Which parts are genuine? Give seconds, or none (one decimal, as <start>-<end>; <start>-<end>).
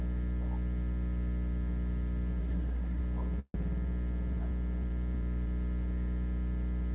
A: 0.0-2.4; 3.0-6.9